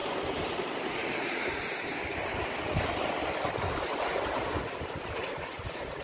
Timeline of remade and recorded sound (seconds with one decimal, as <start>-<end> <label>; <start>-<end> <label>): 0.0-1.0 recorded; 1.0-1.6 remade; 1.6-5.2 recorded; 5.2-6.0 remade